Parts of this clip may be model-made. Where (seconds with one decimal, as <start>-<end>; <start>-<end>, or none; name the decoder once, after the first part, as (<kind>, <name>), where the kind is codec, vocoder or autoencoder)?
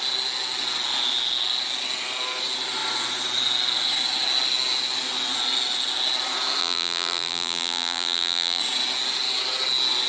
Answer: 6.6-8.6 (vocoder, BigVGAN v2)